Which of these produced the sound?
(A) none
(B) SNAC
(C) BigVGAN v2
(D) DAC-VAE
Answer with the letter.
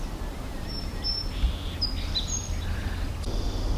A